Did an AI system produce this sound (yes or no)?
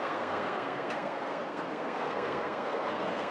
yes